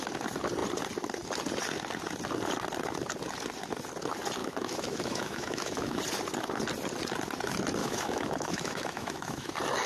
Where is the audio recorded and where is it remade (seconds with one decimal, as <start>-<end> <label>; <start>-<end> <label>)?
0.0-4.4 recorded; 4.4-6.0 remade; 6.0-7.8 recorded; 7.8-9.5 remade; 9.5-9.9 recorded